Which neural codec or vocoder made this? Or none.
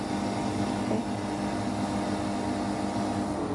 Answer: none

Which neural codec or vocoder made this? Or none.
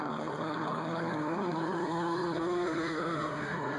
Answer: codec, SNAC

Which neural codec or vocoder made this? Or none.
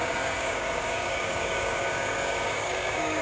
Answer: codec, DAC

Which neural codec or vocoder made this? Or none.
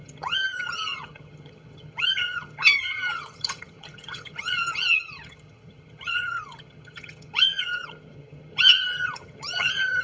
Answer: vocoder, HiFi-GAN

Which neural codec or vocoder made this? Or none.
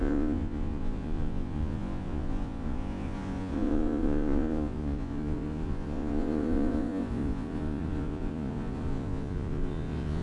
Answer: vocoder, Vocos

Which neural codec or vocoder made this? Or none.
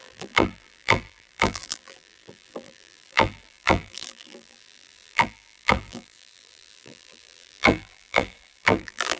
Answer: vocoder, BigVGAN v2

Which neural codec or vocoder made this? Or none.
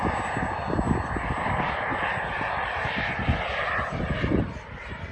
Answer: none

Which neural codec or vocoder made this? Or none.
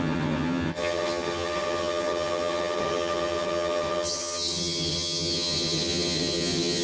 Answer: vocoder, HiFi-GAN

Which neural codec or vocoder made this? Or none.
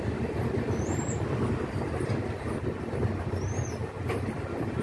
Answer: none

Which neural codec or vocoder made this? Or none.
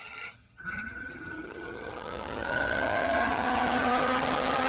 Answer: vocoder, HiFi-GAN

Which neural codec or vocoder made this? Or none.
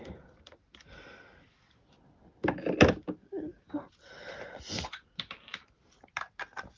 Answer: none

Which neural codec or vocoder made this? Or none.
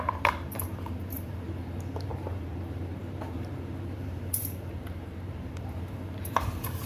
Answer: vocoder, BigVGAN v2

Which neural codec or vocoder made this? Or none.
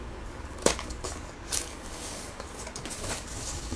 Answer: codec, DAC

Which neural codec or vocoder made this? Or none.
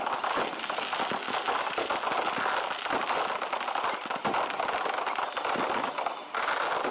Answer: none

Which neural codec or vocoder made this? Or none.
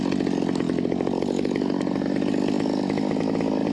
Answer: none